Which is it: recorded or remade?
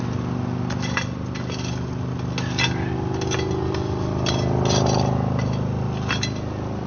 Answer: recorded